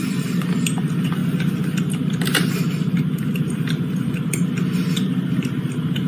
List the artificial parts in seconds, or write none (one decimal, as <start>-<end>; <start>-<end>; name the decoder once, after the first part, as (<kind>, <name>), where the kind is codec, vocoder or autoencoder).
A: 0.0-1.2 (vocoder, BigVGAN v2); 4.9-6.1